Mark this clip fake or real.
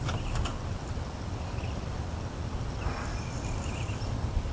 real